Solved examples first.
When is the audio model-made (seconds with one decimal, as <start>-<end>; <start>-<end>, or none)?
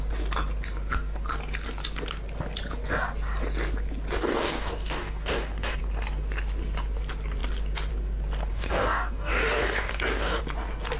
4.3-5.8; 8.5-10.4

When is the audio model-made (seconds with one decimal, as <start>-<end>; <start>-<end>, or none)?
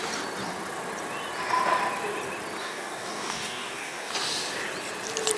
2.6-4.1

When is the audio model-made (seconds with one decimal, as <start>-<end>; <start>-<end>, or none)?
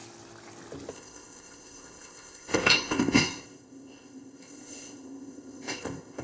0.9-6.2